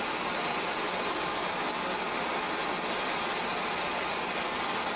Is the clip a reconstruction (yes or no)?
no